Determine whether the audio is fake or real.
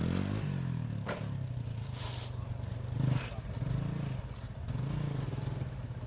real